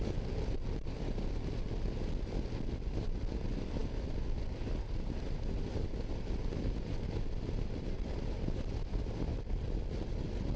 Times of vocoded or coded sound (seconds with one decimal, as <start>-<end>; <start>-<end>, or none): none